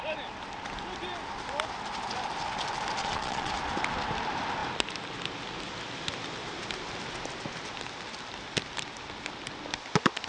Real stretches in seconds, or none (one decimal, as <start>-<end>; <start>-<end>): 0.0-3.0; 3.5-10.3